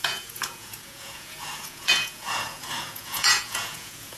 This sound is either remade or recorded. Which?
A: remade